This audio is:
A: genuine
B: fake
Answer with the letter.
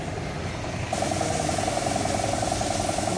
A